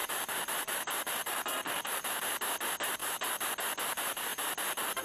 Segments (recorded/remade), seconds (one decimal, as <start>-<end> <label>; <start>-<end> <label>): 0.0-2.2 remade; 2.2-3.0 recorded; 3.0-3.5 remade; 3.5-5.0 recorded